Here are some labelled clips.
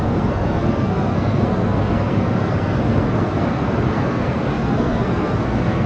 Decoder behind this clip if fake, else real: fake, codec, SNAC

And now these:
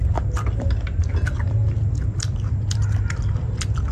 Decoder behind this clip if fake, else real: real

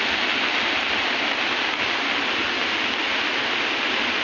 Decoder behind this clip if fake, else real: real